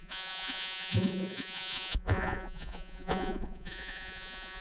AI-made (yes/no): yes